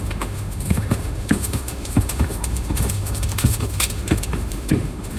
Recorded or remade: remade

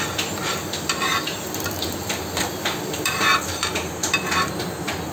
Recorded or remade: recorded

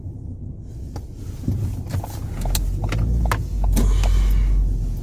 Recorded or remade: recorded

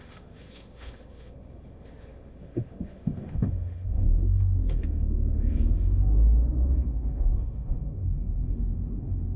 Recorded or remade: remade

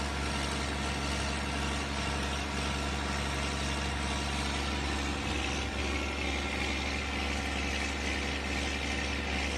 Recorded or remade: recorded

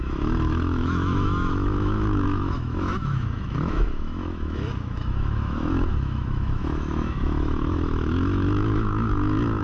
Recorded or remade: remade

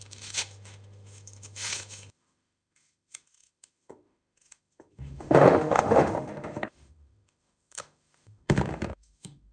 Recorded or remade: remade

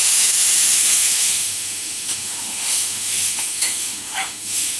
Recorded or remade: remade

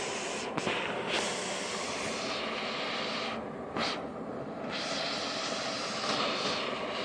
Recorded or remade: recorded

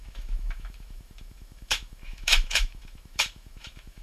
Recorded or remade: remade